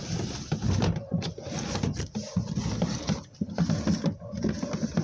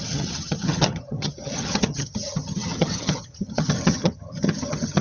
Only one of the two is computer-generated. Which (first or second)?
second